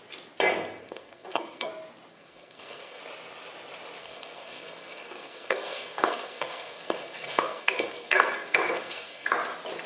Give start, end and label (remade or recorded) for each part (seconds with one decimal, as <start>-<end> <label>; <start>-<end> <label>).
0.0-0.8 recorded; 0.8-1.7 remade; 1.7-2.1 recorded; 2.1-3.0 remade; 3.0-4.0 recorded; 4.0-9.3 remade; 9.3-9.9 recorded